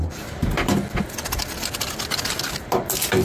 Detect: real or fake real